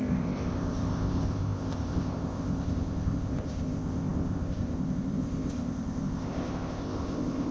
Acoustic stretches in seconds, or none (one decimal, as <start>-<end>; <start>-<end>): none